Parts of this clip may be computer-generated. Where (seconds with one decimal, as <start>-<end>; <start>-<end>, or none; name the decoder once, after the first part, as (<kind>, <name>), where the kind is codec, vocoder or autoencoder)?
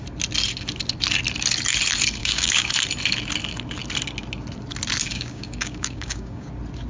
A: 2.2-2.7 (codec, DAC); 5.1-6.5